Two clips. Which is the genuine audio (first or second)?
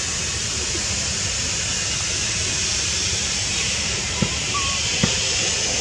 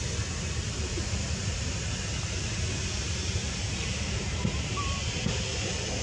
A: first